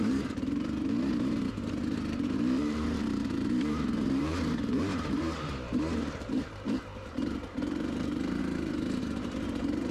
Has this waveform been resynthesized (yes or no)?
yes